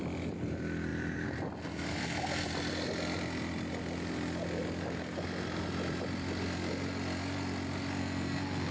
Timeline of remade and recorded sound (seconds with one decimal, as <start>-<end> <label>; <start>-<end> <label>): 0.0-8.0 recorded; 8.0-8.7 remade